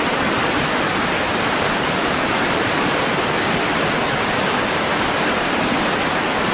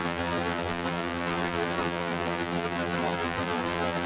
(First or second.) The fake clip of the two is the second